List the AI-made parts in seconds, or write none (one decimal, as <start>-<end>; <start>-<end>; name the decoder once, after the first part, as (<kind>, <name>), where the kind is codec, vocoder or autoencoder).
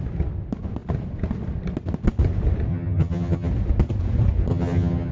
2.7-3.5 (vocoder, HiFi-GAN); 4.5-5.1